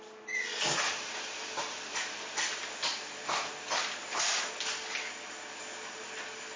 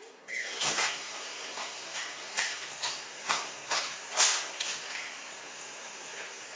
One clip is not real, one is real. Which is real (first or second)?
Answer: first